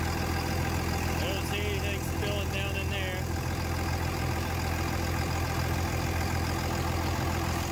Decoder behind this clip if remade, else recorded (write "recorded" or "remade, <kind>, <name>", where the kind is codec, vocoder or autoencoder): recorded